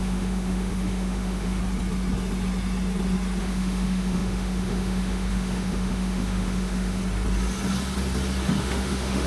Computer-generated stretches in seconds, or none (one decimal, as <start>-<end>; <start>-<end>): 0.0-1.6; 3.4-7.0; 8.6-9.3